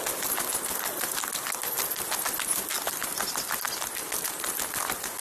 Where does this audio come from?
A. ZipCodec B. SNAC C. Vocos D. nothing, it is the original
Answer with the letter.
D